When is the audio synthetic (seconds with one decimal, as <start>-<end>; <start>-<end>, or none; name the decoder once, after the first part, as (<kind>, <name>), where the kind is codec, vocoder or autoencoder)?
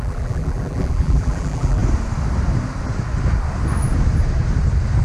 0.0-1.8 (vocoder, BigVGAN v2)